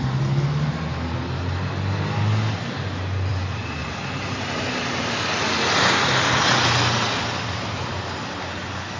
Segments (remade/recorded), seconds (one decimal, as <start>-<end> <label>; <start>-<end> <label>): 0.0-9.0 recorded